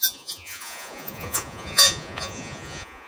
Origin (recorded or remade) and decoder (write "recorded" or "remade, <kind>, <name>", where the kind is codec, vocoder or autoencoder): remade, vocoder, Vocos